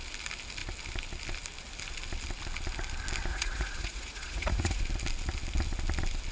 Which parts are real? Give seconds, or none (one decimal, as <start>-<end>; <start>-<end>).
0.0-3.3; 4.8-6.3

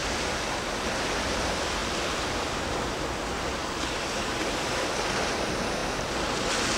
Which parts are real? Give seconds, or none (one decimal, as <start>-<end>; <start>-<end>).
0.0-3.6; 4.3-6.8

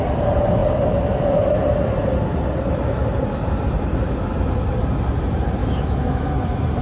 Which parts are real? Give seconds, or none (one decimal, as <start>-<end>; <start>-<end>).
0.0-5.6; 6.3-6.8

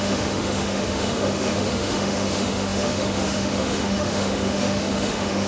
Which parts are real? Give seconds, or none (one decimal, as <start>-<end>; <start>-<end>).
none

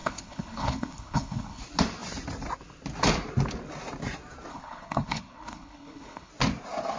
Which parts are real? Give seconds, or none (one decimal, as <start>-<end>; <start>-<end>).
1.6-4.5; 6.3-7.0